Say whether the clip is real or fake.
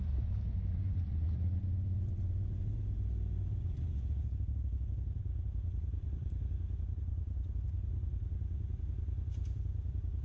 fake